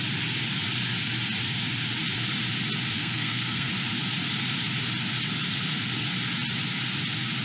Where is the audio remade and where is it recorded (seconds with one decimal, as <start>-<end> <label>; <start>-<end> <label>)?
0.0-3.0 recorded; 3.0-3.7 remade; 3.7-7.4 recorded